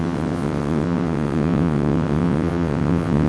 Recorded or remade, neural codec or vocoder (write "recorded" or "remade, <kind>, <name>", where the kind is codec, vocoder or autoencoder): remade, vocoder, WaveNeXt